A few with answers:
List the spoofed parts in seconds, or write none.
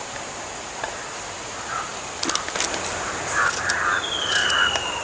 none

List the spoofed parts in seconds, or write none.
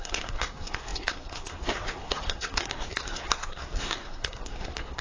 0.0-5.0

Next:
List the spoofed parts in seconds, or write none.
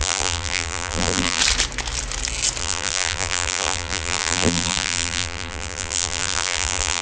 0.0-1.4; 2.6-7.0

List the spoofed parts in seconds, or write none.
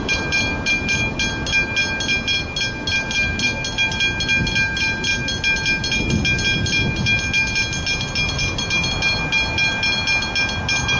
none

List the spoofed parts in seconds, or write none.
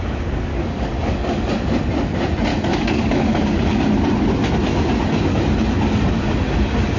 0.5-1.5; 2.5-3.8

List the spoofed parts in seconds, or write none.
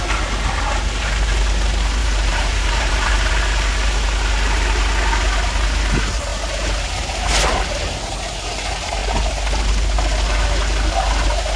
2.0-3.3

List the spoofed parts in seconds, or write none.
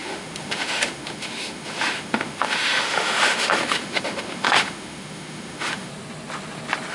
0.0-5.9